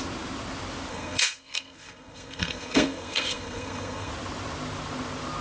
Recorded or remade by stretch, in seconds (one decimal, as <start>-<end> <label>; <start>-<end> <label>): 0.0-0.9 recorded; 0.9-4.1 remade; 4.1-5.4 recorded